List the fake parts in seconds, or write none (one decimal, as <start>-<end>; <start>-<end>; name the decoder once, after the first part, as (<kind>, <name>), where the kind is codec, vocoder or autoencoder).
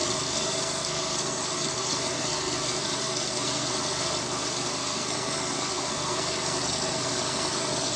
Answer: 0.0-8.0 (codec, SNAC)